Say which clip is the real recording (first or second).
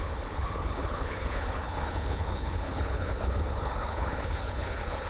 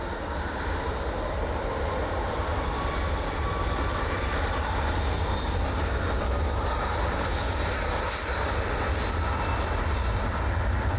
second